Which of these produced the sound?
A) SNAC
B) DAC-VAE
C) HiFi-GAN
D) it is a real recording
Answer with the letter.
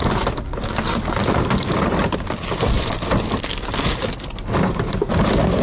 D